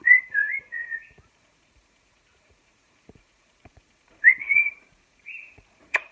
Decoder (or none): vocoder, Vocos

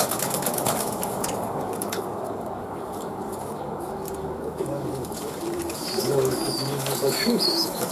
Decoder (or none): codec, DAC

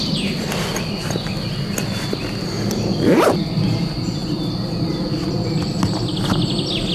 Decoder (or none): none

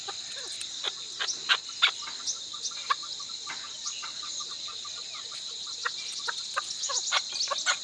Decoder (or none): none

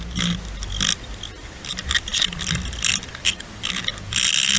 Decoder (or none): none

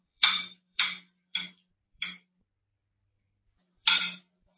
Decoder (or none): vocoder, BigVGAN v2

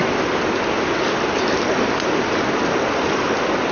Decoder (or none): none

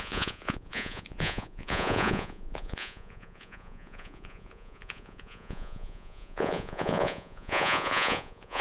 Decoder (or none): vocoder, Vocos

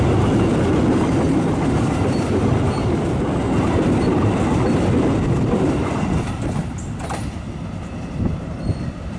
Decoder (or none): none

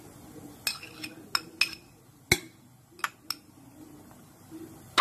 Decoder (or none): none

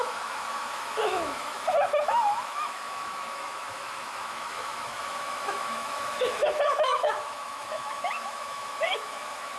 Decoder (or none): autoencoder, DAC-VAE